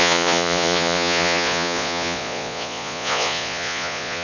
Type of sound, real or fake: fake